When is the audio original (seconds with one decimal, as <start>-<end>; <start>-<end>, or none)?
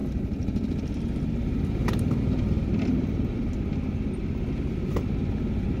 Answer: 0.0-5.8